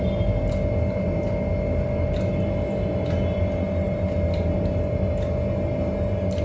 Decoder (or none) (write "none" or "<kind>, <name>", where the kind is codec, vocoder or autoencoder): none